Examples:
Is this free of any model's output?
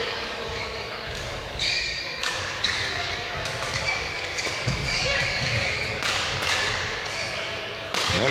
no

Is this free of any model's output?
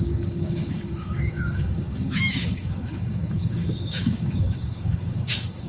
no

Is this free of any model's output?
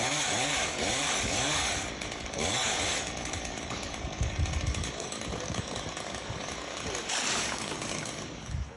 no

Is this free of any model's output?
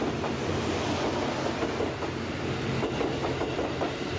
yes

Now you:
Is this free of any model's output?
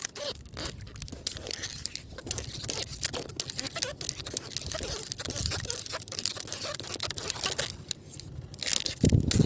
yes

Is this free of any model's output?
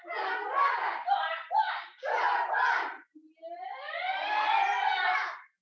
yes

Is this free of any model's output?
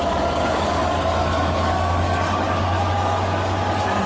no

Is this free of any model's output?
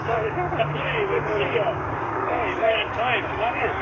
no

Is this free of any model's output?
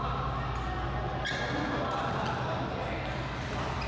yes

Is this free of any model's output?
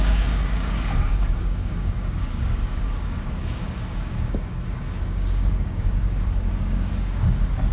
no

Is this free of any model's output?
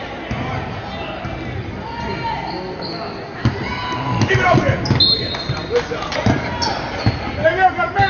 yes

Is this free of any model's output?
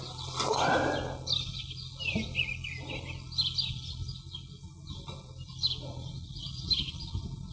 yes